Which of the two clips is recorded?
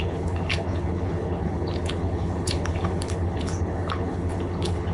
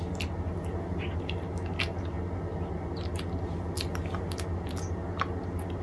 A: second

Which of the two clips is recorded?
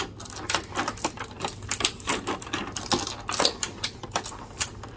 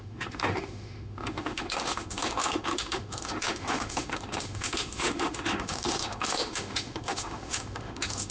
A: first